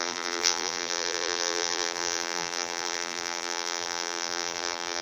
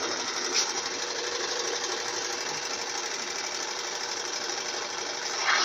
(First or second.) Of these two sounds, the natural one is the second